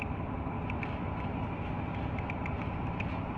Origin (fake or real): real